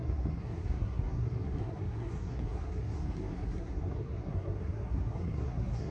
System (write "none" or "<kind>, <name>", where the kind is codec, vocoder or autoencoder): codec, SNAC